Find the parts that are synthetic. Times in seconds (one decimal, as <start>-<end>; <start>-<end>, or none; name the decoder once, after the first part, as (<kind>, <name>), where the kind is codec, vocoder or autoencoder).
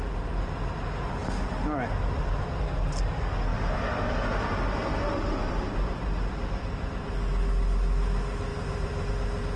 4.8-6.3 (vocoder, BigVGAN v2); 8.5-9.1